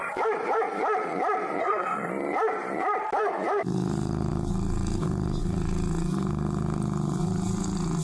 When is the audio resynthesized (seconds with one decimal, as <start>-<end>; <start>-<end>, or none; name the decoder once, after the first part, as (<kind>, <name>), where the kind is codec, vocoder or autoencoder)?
1.6-2.1 (codec, SNAC)